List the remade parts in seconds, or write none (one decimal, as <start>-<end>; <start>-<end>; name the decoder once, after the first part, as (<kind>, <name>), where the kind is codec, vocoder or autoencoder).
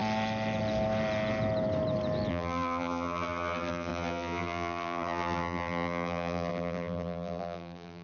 2.3-8.0 (vocoder, BigVGAN v2)